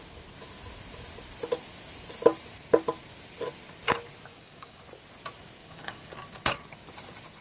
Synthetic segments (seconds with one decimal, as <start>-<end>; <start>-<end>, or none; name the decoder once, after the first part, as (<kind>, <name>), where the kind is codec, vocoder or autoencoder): 4.3-4.8 (codec, DAC); 5.6-6.1

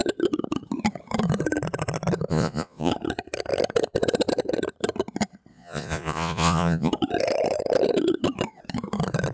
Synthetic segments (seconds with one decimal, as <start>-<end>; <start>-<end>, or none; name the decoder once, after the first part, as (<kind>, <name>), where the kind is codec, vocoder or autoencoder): 2.3-2.9 (vocoder, Vocos); 5.5-6.9

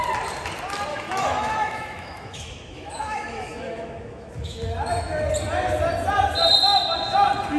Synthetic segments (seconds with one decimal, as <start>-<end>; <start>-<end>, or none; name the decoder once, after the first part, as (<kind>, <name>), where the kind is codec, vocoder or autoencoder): 0.9-5.3 (autoencoder, DAC-VAE)

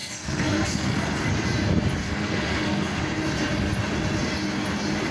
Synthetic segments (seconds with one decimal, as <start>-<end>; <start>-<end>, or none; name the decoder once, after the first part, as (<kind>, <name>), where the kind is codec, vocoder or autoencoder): 0.0-1.3 (codec, SNAC); 2.0-3.0

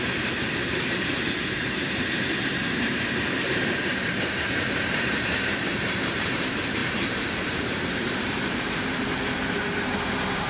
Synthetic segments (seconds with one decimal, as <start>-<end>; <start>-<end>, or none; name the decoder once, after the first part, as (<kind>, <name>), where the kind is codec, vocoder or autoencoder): 0.0-10.5 (vocoder, BigVGAN v2)

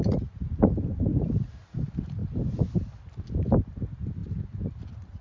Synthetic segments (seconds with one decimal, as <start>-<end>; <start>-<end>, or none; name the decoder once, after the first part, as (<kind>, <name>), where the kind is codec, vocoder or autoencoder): none

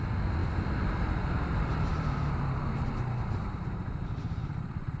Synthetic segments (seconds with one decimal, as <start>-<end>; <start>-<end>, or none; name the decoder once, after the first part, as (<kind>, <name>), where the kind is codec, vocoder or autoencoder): 1.9-5.0 (vocoder, BigVGAN v2)